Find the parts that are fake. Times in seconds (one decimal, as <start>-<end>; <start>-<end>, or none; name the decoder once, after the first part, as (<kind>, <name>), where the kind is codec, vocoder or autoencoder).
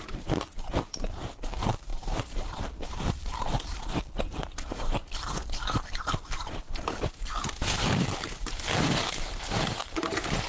0.0-10.5 (vocoder, BigVGAN v2)